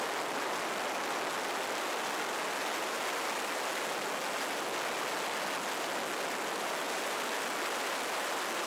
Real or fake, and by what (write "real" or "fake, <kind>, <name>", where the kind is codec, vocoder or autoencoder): real